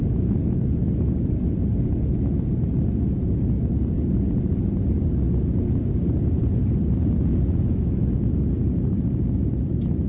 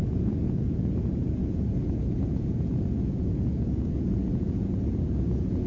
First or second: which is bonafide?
first